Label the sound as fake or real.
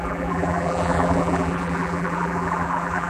fake